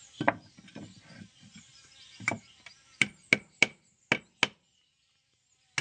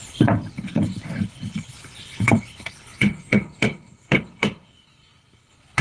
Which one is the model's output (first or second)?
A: second